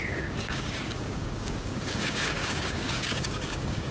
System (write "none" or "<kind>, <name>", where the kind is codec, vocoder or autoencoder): codec, DAC